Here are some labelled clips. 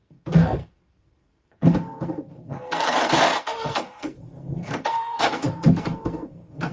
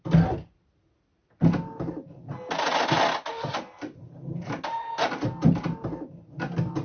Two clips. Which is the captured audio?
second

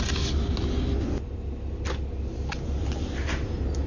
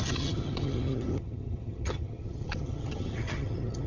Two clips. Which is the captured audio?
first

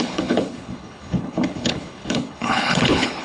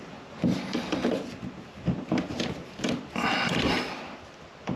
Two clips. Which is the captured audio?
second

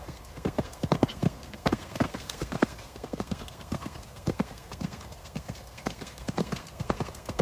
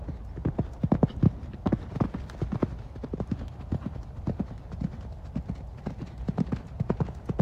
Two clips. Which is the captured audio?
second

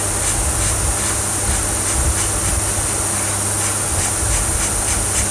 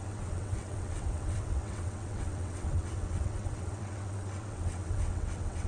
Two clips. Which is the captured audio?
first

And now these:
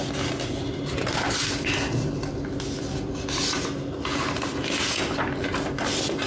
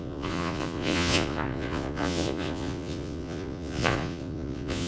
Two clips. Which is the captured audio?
first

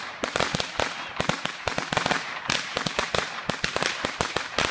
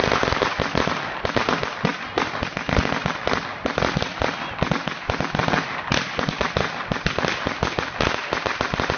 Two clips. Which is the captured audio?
second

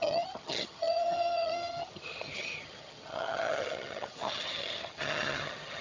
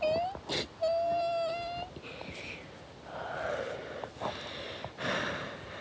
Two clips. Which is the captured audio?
second